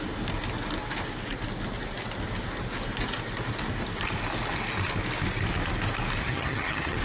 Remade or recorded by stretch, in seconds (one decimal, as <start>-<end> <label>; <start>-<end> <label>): 0.0-6.2 recorded; 6.2-7.0 remade